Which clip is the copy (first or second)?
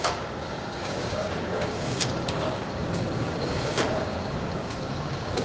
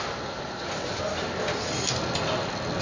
first